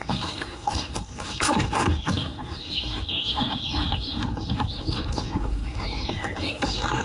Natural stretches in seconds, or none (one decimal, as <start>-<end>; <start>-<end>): none